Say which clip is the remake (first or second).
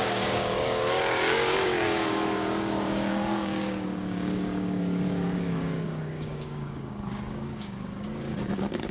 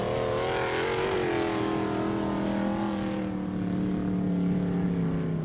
first